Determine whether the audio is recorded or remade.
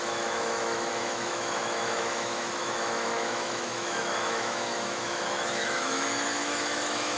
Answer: remade